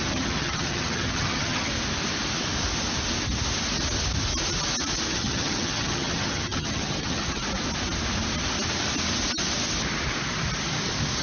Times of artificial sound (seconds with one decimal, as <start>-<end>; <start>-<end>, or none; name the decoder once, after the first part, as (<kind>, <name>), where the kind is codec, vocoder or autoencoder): 0.0-1.7 (vocoder, HiFi-GAN); 5.1-7.4